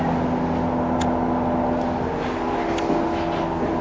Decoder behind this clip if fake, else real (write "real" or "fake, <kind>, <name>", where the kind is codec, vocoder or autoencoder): real